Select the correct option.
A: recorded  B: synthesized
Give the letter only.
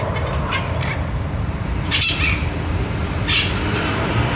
A